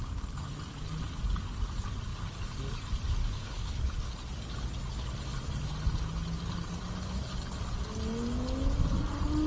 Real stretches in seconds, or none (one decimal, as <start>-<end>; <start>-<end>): 0.0-3.2; 3.8-9.5